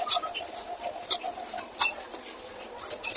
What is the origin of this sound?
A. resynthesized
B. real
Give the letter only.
A